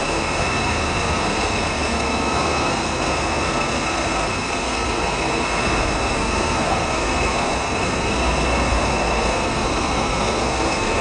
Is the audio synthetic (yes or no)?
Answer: yes